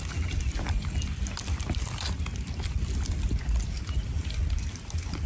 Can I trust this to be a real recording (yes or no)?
yes